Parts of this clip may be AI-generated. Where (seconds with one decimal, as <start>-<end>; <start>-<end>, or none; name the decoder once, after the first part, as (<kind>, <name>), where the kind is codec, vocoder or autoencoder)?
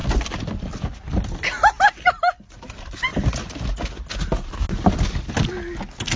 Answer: none